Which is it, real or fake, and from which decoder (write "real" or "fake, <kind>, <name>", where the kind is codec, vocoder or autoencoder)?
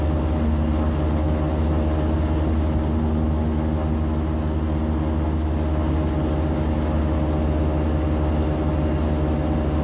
real